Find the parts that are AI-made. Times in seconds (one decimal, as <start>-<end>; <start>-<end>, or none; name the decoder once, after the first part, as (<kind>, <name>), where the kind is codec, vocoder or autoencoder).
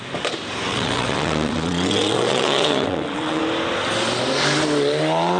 0.7-3.4 (vocoder, WaveNeXt)